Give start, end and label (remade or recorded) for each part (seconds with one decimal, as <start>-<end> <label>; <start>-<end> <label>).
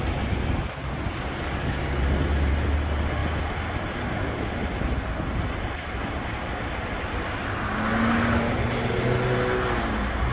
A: 0.0-10.3 recorded